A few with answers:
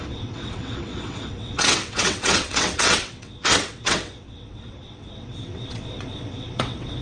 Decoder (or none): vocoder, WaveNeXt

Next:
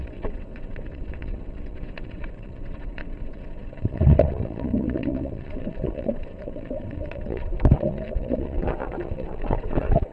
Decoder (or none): vocoder, WaveNeXt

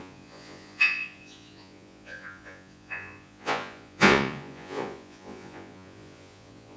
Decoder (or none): vocoder, Vocos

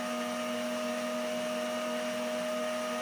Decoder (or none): none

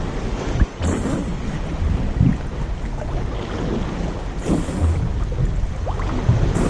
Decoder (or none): none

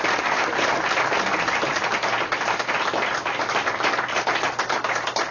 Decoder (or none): none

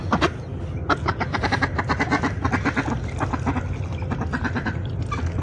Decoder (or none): none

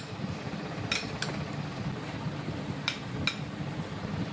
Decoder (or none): none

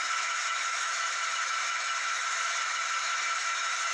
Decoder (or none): autoencoder, DAC-VAE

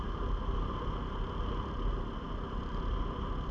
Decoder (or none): none